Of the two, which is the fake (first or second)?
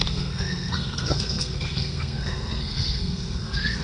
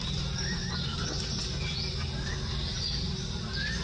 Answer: first